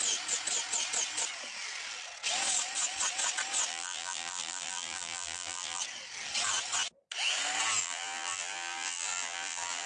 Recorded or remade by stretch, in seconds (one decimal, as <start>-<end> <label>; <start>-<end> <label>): 0.0-3.7 recorded; 3.7-5.8 remade; 5.8-7.8 recorded; 7.8-9.9 remade